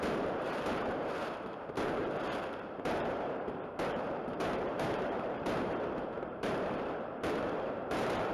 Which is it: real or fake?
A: fake